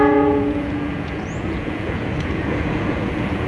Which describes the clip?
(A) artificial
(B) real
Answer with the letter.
A